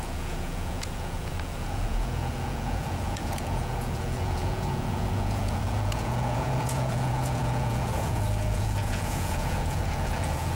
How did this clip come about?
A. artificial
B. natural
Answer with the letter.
A